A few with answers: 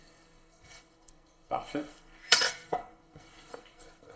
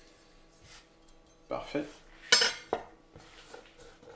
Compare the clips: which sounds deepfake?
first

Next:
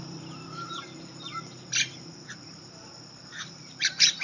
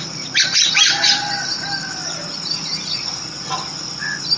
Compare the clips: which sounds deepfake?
first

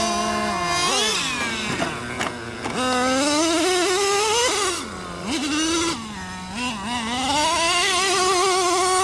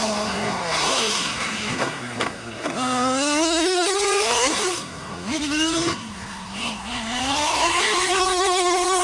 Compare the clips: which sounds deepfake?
second